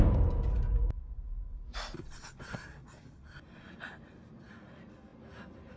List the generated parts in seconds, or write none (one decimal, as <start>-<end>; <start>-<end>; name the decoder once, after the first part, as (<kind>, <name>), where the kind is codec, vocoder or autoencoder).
none